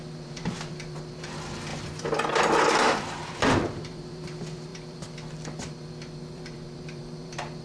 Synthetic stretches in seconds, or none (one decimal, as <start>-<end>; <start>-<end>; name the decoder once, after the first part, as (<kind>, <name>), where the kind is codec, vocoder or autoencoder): 0.0-7.6 (vocoder, BigVGAN v2)